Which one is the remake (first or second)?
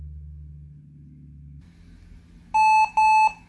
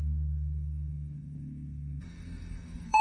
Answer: second